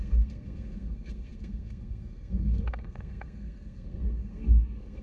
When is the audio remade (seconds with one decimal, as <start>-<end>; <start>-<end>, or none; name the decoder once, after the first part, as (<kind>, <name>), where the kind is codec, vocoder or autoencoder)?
0.0-5.0 (codec, SNAC)